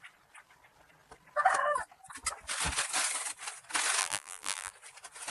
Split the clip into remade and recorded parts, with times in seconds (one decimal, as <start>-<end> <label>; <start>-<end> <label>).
0.0-4.0 recorded; 4.0-4.7 remade; 4.7-5.3 recorded